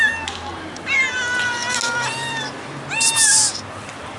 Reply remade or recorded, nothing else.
recorded